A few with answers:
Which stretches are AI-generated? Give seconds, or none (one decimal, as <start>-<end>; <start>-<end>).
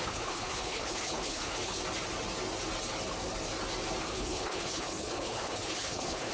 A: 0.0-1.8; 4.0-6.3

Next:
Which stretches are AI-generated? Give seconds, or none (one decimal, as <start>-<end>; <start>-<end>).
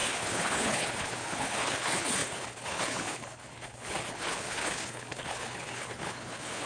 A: 0.0-6.7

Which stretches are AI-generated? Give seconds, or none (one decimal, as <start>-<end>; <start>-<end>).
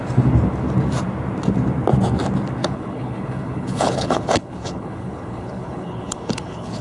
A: 2.6-6.8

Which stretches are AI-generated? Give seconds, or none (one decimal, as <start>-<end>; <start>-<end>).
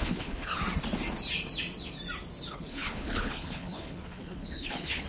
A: 0.0-0.6; 2.5-5.1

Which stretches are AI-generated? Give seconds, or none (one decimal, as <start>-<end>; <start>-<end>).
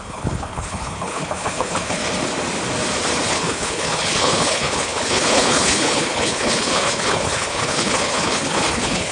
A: 0.0-2.0; 3.3-9.1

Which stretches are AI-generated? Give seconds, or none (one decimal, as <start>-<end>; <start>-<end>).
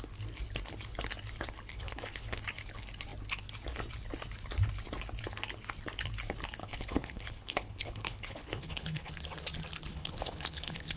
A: 1.7-2.4; 6.6-9.1; 9.9-11.0